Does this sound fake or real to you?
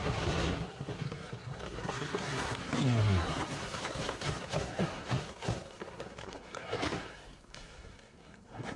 fake